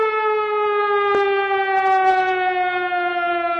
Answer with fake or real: real